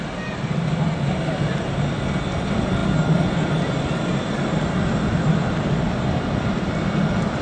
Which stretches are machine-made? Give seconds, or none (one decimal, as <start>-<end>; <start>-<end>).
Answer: none